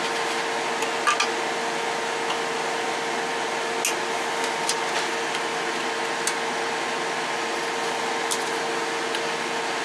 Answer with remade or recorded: recorded